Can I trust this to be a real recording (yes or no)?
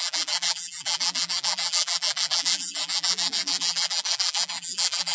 no